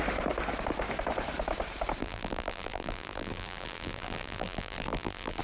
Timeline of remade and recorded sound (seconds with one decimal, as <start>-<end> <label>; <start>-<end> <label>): 0.0-2.0 recorded; 2.0-5.4 remade

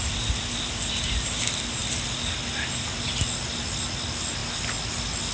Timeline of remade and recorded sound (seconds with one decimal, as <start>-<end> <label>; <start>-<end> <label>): 0.0-5.3 recorded

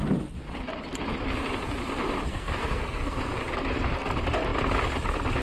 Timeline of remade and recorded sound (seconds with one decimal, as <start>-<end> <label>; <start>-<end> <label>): 0.0-2.3 recorded; 2.3-3.3 remade; 3.3-5.4 recorded

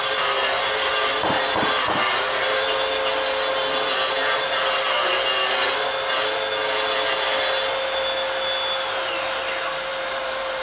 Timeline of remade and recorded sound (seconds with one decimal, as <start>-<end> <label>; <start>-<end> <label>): 0.0-9.9 recorded; 9.9-10.6 remade

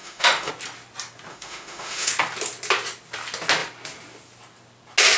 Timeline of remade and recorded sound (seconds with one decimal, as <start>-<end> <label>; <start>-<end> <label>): 0.0-0.5 remade; 0.5-1.3 recorded; 1.3-2.1 remade; 2.1-5.2 recorded

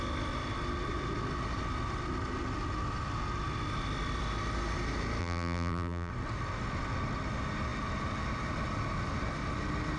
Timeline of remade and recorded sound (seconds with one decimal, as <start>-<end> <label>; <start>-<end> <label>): 0.0-5.2 recorded; 5.2-6.1 remade; 6.1-10.0 recorded

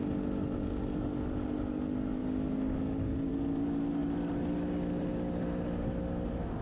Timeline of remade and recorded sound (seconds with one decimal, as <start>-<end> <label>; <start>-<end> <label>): 0.0-2.2 recorded; 2.2-3.3 remade; 3.3-6.6 recorded